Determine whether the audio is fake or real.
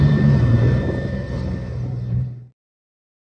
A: fake